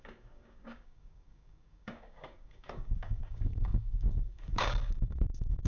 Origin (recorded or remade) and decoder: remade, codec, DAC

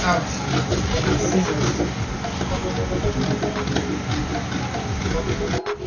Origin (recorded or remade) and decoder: recorded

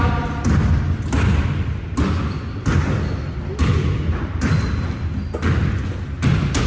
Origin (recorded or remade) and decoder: recorded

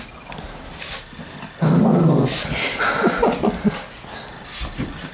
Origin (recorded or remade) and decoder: recorded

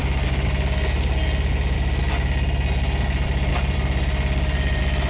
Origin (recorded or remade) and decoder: recorded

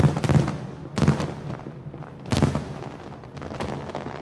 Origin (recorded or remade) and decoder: recorded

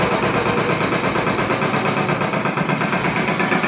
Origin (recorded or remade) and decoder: recorded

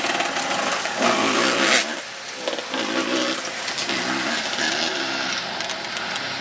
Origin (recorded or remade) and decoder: recorded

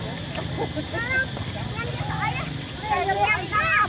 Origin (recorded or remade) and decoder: recorded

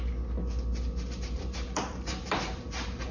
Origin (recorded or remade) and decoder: recorded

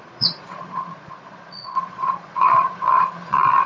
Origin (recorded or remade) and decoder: remade, vocoder, Vocos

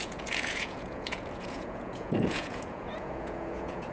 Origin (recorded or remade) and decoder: remade, vocoder, Vocos